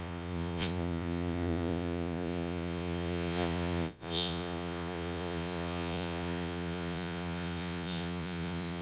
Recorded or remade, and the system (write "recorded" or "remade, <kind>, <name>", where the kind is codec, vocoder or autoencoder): remade, vocoder, Vocos